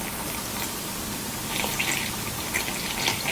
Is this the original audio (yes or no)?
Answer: yes